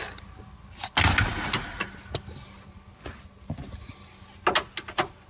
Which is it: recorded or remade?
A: recorded